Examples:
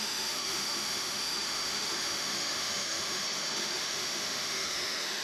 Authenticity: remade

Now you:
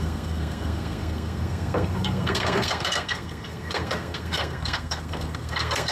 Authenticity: remade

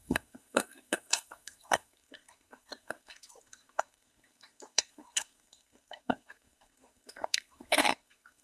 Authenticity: remade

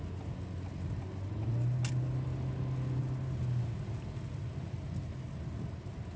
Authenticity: recorded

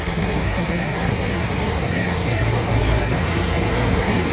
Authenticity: remade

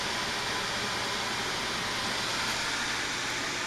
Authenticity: recorded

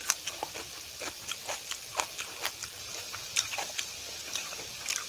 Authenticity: recorded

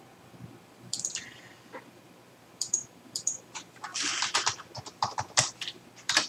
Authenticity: remade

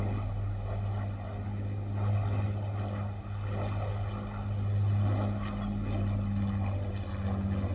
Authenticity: recorded